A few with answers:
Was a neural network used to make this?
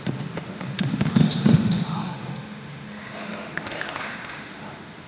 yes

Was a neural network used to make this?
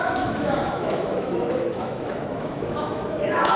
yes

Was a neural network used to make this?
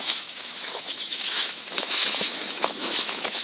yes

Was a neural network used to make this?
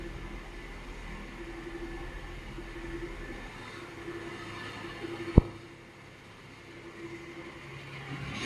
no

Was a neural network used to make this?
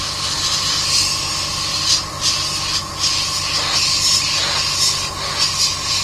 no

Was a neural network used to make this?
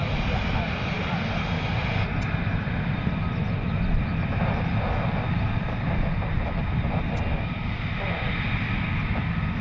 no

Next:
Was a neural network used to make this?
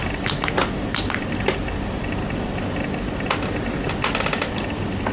no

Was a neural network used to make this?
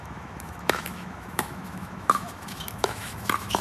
yes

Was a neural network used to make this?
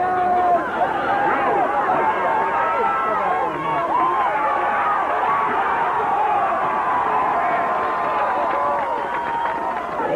no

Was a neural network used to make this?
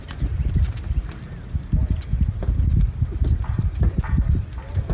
no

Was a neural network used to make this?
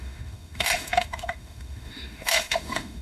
yes